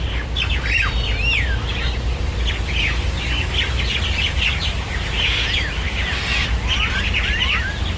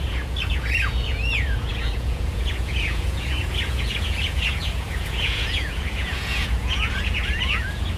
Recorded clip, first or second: first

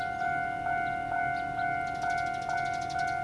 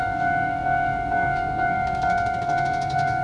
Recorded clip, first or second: first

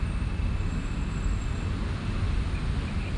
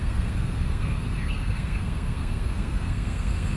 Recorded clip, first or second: first